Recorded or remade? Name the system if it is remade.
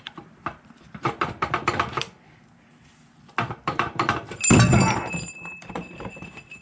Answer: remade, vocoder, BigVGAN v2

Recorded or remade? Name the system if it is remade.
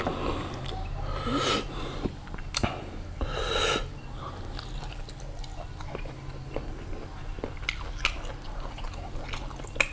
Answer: recorded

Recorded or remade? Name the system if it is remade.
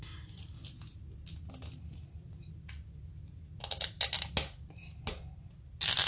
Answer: recorded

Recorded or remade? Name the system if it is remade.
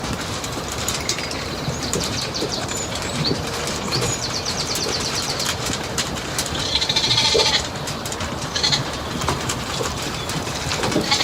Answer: remade, vocoder, BigVGAN v2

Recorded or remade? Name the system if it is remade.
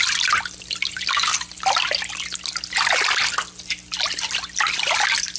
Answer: recorded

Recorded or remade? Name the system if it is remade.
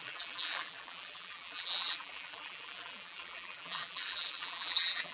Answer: remade, vocoder, BigVGAN v2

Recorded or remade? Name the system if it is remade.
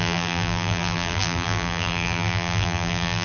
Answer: remade, vocoder, BigVGAN v2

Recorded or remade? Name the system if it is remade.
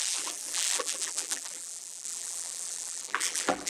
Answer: remade, vocoder, BigVGAN v2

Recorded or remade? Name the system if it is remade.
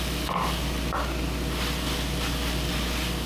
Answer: recorded